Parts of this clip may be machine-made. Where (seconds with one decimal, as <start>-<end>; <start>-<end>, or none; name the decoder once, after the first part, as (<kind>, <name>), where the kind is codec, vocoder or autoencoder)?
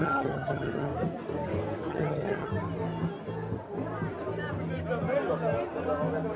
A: 0.0-0.9 (vocoder, HiFi-GAN); 1.9-2.5